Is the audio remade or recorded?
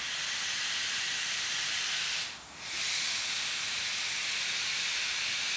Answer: recorded